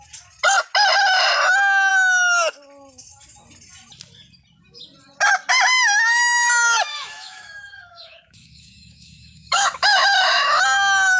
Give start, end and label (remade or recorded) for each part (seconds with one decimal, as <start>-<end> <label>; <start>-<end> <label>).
0.0-6.9 recorded; 6.9-10.6 remade; 10.6-11.2 recorded